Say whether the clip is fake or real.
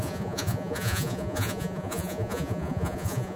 fake